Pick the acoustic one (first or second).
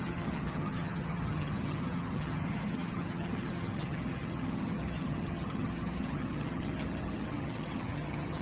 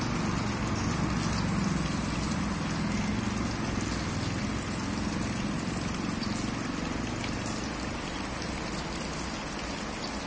second